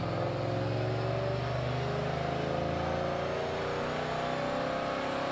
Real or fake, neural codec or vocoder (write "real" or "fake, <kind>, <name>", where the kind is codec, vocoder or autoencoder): real